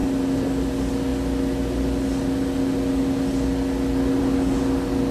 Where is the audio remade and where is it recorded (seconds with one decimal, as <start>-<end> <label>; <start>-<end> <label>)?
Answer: 0.0-5.1 recorded